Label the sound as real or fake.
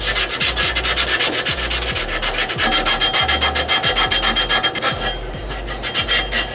real